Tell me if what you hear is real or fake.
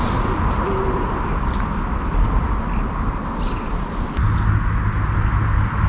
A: real